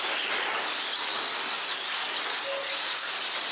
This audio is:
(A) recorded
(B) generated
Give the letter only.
A